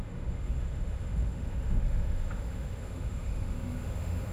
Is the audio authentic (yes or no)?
no